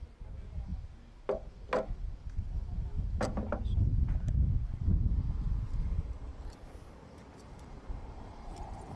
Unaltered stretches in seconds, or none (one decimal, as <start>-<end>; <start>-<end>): 0.7-5.6; 6.3-7.5